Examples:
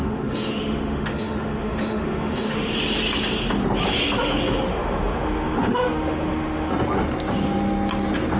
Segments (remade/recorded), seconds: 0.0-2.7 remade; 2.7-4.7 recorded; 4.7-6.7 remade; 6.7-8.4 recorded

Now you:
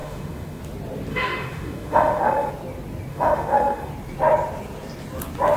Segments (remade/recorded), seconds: 0.0-0.6 remade; 0.6-1.1 recorded; 1.1-2.5 remade; 2.5-3.1 recorded; 3.1-3.9 remade; 3.9-5.6 recorded